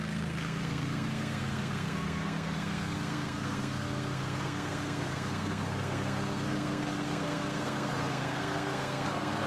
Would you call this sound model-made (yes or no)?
yes